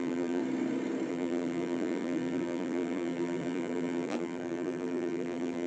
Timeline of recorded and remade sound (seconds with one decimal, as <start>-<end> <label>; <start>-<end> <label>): 0.0-0.4 remade; 0.4-1.1 recorded; 1.1-5.7 remade